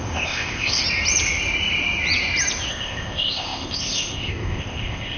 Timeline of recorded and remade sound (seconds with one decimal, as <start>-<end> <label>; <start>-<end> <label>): 0.0-0.8 remade; 0.8-2.7 recorded; 2.7-5.2 remade